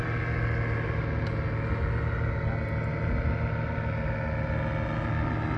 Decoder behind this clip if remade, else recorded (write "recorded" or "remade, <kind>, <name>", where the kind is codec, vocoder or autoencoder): recorded